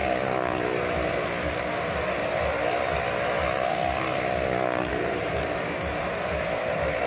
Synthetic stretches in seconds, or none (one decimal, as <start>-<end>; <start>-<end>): 4.9-6.1